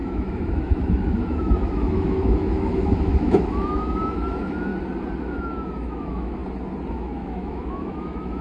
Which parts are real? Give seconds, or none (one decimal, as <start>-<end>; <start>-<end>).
4.7-5.2; 6.4-6.9